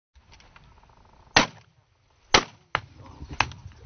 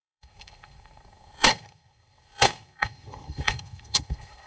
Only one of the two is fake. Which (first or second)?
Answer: second